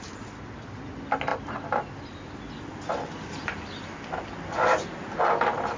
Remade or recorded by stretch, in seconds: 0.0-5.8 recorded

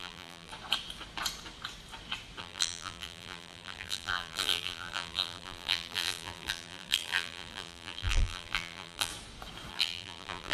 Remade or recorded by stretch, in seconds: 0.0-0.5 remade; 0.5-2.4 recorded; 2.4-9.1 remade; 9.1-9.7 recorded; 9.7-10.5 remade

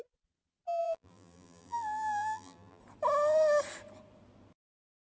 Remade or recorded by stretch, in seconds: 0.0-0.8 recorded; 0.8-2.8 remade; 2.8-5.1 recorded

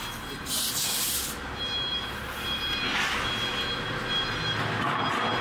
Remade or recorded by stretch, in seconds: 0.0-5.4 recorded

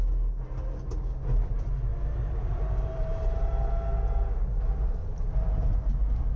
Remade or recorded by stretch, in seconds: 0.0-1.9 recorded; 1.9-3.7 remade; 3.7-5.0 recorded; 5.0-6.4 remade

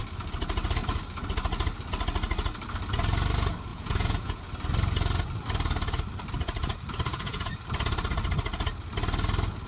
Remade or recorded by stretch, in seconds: 0.0-3.7 recorded; 3.7-4.4 remade; 4.4-7.1 recorded; 7.1-7.6 remade; 7.6-9.7 recorded

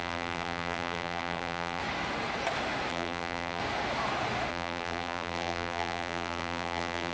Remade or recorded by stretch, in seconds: 0.0-1.8 remade; 1.8-2.9 recorded; 2.9-3.6 remade; 3.6-4.5 recorded; 4.5-7.1 remade